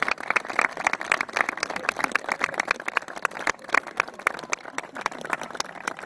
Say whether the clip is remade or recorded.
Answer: remade